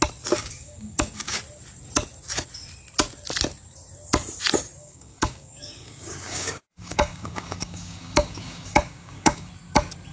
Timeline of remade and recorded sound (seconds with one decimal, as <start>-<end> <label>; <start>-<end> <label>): 0.0-0.4 recorded; 0.4-1.4 remade; 1.4-4.8 recorded; 4.8-9.5 remade; 9.5-10.1 recorded

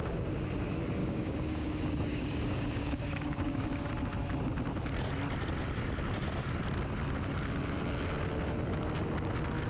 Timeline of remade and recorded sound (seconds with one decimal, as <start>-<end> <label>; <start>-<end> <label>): 0.0-1.0 recorded; 1.0-3.9 remade; 3.9-9.7 recorded

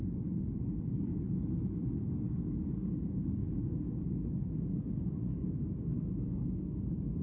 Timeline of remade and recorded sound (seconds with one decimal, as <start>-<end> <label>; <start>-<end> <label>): 0.0-1.1 remade; 1.1-1.8 recorded; 1.8-7.2 remade

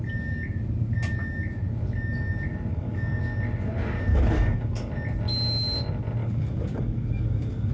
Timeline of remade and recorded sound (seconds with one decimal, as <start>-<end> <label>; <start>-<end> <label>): 0.0-2.7 recorded; 2.7-3.2 remade; 3.2-4.1 recorded; 4.1-4.9 remade; 4.9-6.2 recorded; 6.2-7.7 remade

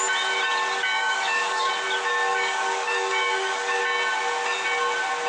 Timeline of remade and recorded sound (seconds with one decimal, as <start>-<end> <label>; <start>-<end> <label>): 0.0-1.0 recorded; 1.0-1.7 remade; 1.7-2.3 recorded; 2.3-3.8 remade; 3.8-5.3 recorded

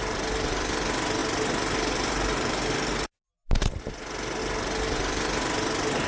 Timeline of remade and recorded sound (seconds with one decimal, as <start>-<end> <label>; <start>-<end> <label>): 0.0-6.1 recorded

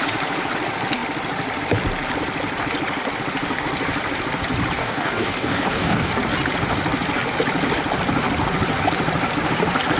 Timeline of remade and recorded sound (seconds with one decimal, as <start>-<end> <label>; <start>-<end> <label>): 0.0-4.8 recorded; 4.8-6.1 remade; 6.1-10.0 recorded